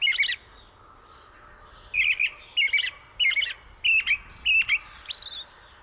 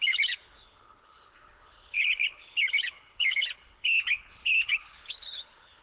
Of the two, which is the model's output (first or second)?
second